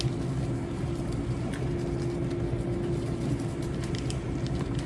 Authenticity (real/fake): real